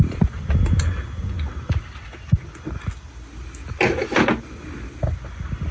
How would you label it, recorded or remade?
recorded